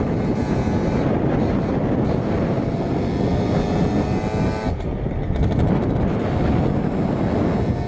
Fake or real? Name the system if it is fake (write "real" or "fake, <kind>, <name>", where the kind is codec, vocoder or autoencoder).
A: real